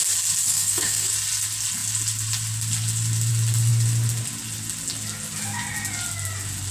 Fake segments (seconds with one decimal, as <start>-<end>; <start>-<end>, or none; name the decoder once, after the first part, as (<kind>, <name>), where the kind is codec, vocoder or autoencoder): 0.5-1.1 (codec, SNAC)